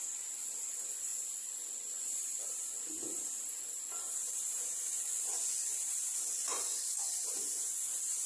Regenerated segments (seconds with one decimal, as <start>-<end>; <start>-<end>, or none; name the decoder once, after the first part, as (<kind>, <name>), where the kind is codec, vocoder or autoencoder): none